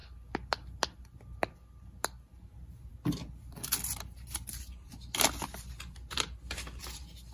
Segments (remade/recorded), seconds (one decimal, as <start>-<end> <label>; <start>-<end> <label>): 0.0-7.3 recorded